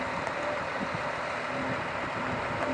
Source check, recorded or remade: recorded